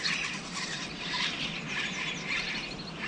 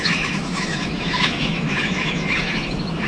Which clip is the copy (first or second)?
second